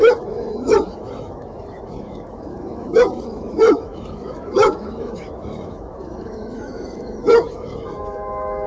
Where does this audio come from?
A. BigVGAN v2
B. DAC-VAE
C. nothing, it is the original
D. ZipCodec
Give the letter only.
B